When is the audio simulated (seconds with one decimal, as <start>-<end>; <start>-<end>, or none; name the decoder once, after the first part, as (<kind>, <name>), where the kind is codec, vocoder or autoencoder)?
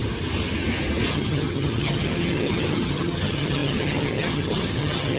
1.1-5.2 (vocoder, HiFi-GAN)